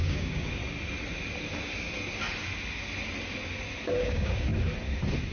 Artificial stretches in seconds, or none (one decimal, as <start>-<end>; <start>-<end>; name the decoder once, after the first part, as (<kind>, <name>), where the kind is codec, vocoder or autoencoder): 0.0-0.6 (codec, DAC); 3.8-4.5

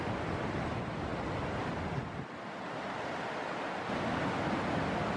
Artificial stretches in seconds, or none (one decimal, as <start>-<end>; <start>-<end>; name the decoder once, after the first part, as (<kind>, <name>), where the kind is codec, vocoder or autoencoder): none